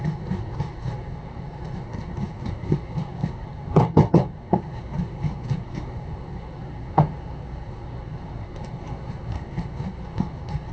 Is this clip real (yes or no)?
no